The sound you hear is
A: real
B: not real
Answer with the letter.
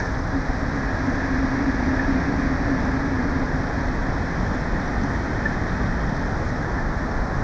A